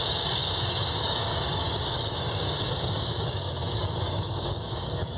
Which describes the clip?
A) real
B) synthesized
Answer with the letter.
B